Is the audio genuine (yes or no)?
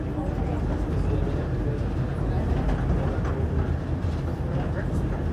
yes